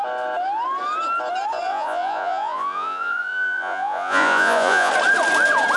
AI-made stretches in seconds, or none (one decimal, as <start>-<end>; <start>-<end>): 1.7-4.9